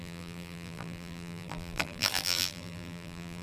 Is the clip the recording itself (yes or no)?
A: no